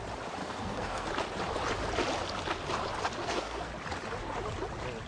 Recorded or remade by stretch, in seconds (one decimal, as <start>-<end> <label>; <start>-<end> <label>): 0.0-0.4 recorded; 0.4-1.1 remade; 1.1-3.2 recorded; 3.2-3.7 remade; 3.7-5.1 recorded